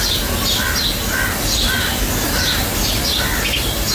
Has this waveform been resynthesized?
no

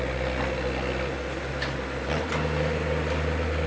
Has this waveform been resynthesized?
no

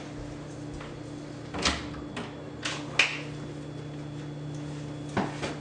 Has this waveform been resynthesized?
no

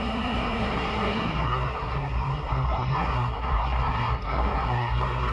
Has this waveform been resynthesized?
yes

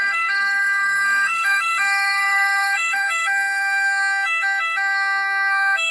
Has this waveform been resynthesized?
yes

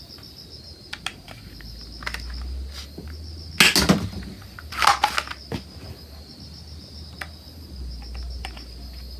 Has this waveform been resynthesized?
no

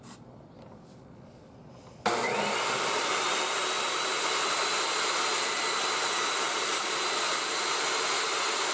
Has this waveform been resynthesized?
no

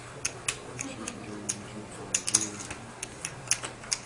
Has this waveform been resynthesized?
no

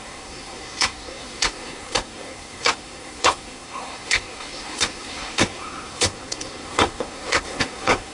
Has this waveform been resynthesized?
yes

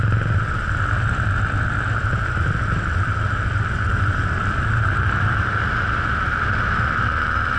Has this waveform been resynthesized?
no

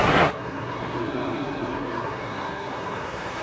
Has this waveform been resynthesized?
yes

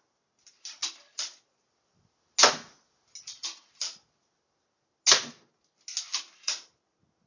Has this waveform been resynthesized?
no